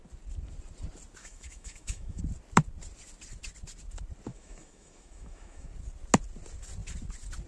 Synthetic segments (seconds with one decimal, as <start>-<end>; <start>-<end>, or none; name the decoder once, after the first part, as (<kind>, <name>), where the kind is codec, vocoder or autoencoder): 1.2-2.2 (autoencoder, DAC-VAE); 4.3-5.7